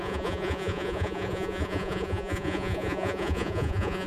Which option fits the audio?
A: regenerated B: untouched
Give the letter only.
A